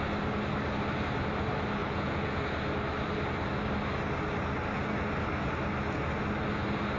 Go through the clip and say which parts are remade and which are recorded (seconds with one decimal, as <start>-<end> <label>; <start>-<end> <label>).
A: 0.0-1.8 recorded; 1.8-2.4 remade; 2.4-7.0 recorded